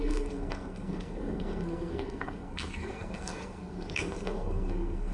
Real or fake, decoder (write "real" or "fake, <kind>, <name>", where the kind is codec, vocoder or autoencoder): fake, codec, SNAC